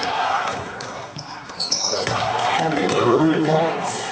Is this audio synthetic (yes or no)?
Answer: yes